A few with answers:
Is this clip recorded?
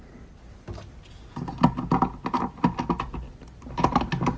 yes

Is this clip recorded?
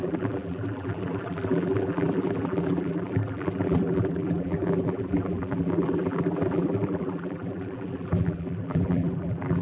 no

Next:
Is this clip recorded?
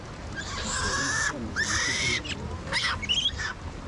yes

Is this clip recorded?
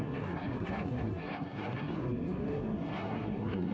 no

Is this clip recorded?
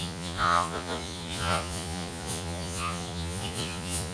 no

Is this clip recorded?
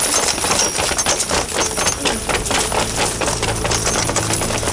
yes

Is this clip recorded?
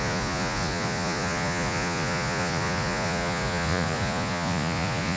no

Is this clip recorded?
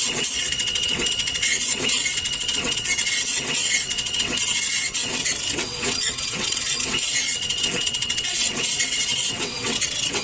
no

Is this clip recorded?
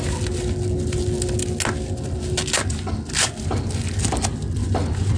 yes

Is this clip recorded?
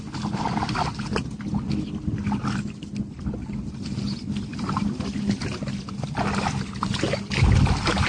yes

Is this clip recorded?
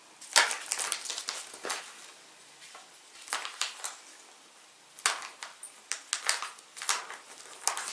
yes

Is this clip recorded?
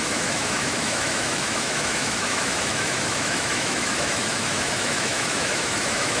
no